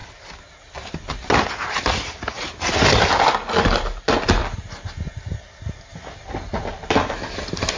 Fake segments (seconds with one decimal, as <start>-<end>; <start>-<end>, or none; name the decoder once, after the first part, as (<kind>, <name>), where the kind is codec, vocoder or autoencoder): none